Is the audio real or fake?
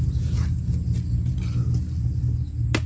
real